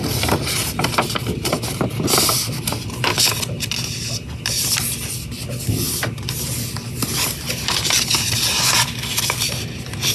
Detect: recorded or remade recorded